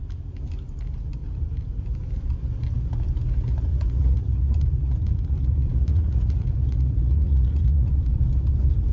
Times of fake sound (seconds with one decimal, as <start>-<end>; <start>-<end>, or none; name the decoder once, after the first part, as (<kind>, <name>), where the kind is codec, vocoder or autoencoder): 3.7-7.9 (vocoder, Vocos)